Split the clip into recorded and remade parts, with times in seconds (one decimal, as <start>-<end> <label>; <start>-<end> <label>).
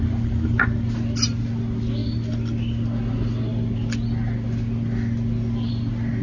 0.0-6.2 recorded